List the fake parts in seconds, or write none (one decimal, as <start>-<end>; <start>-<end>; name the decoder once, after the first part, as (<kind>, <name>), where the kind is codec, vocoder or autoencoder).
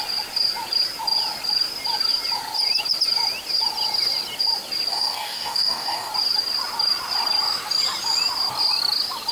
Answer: 4.9-6.1 (codec, DAC)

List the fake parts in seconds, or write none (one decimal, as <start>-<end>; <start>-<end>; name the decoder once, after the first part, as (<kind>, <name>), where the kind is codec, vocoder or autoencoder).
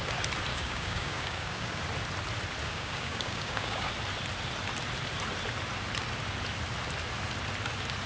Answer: 0.5-1.8 (codec, DAC); 2.6-3.9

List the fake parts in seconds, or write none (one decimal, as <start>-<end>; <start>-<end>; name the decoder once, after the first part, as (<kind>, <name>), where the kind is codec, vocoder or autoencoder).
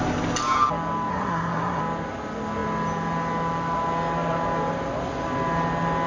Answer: 1.1-1.8 (codec, SNAC)